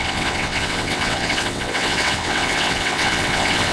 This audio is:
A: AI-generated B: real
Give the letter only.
A